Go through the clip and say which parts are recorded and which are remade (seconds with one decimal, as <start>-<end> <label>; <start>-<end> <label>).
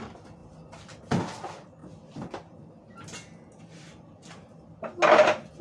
0.0-5.6 recorded